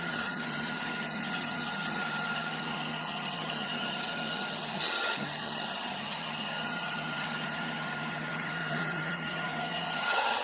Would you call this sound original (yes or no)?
no